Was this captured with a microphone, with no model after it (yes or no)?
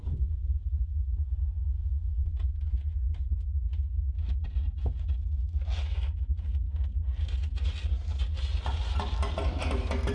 yes